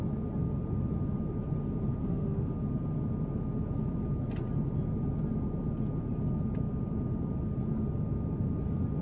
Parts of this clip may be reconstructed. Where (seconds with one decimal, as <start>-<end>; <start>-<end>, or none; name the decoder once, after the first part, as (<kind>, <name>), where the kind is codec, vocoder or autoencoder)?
2.0-2.5 (autoencoder, DAC-VAE)